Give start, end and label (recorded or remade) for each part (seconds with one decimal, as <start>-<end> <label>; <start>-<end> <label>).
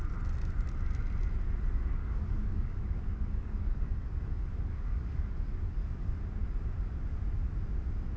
0.0-2.0 recorded; 2.0-6.1 remade; 6.1-8.2 recorded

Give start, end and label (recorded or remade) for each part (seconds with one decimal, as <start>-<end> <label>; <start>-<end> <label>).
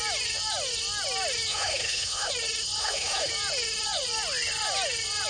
0.0-1.5 recorded; 1.5-2.3 remade; 2.3-2.8 recorded; 2.8-3.3 remade; 3.3-5.3 recorded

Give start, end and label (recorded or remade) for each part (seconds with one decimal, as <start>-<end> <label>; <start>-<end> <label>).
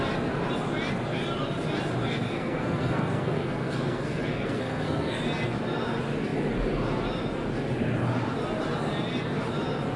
0.0-2.0 recorded; 2.0-5.2 remade; 5.2-10.0 recorded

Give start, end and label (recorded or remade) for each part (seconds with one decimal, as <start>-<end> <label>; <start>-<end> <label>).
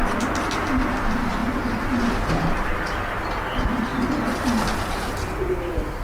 0.0-6.0 recorded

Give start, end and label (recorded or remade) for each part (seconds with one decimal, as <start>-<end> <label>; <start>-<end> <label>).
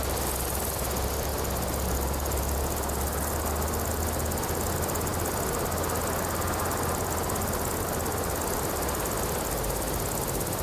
0.0-10.6 recorded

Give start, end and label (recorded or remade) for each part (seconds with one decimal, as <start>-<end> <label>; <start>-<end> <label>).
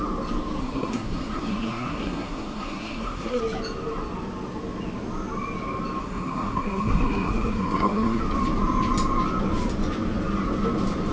0.0-0.6 recorded; 0.6-3.4 remade; 3.4-6.0 recorded; 6.0-8.2 remade; 8.2-11.1 recorded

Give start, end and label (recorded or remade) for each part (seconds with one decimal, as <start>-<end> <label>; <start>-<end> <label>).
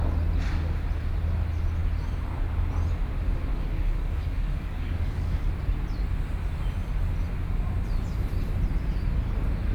0.0-3.5 recorded; 3.5-5.5 remade; 5.5-9.7 recorded